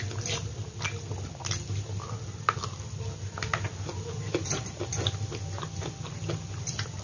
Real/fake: real